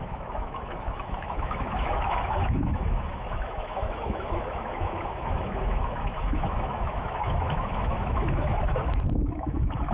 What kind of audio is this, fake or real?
fake